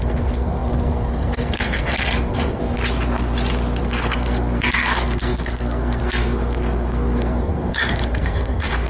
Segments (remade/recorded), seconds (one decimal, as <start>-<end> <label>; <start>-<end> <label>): 0.0-2.6 remade; 2.6-3.8 recorded; 3.8-8.9 remade